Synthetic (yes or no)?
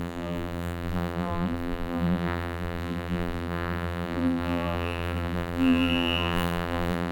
yes